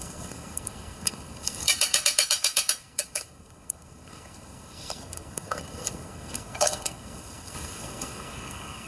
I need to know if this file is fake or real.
fake